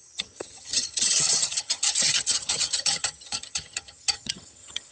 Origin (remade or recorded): remade